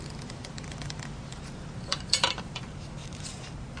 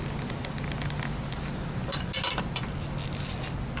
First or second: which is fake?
first